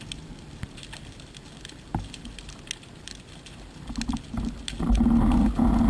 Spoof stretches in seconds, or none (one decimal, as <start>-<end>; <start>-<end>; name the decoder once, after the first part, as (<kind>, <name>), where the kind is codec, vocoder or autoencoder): none